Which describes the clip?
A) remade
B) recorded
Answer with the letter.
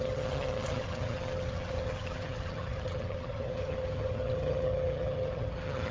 A